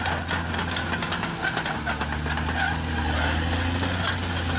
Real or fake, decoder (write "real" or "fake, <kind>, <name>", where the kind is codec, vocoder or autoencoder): real